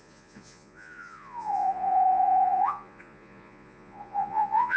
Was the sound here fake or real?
fake